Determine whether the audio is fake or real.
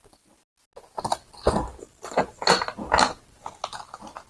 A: real